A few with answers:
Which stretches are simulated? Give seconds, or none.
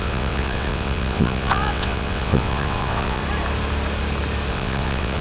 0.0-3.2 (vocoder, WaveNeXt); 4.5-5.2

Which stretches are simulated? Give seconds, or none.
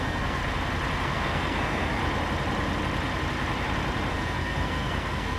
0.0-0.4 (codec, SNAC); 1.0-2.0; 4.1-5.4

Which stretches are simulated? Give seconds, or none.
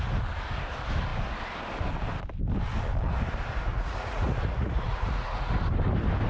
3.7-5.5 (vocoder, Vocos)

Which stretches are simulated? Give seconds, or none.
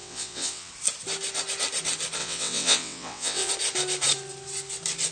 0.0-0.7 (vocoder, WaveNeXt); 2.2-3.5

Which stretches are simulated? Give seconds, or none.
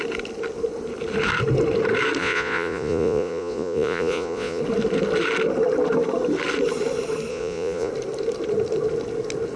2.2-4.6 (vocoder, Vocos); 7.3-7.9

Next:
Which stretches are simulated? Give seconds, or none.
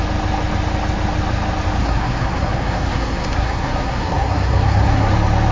1.8-5.1 (codec, SNAC)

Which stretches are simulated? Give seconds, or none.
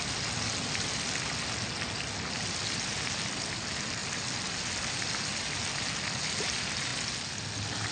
none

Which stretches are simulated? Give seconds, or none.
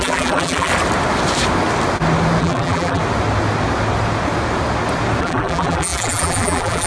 0.0-0.7 (vocoder, BigVGAN v2); 2.4-3.0; 5.2-6.9